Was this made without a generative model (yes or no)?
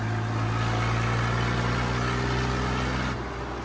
yes